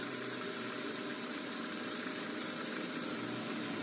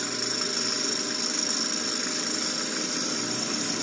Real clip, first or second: second